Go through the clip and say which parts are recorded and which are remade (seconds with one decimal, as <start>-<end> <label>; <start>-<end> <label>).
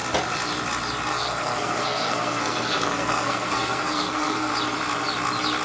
0.0-1.1 recorded; 1.1-4.5 remade; 4.5-5.6 recorded